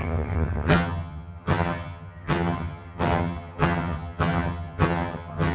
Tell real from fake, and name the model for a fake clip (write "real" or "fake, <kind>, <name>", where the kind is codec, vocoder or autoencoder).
fake, vocoder, HiFi-GAN